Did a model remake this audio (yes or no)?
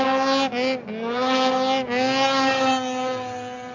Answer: no